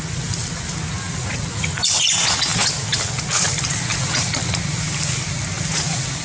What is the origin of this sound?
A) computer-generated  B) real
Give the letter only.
B